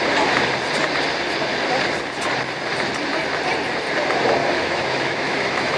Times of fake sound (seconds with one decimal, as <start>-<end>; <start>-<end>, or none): 4.4-5.8